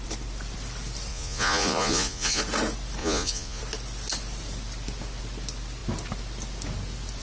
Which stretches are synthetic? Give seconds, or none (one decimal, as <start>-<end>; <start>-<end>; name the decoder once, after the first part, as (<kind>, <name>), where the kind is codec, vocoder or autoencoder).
1.1-2.4 (vocoder, Vocos); 3.0-3.6